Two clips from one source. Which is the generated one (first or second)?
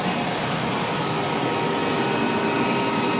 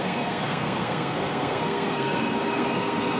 second